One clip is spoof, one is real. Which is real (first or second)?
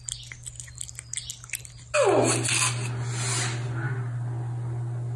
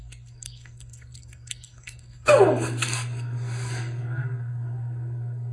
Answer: first